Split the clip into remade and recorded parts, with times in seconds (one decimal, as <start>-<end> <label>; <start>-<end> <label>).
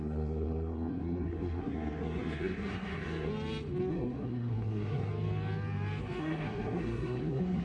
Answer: 0.0-3.3 remade; 3.3-3.9 recorded; 3.9-5.1 remade; 5.1-6.2 recorded; 6.2-7.6 remade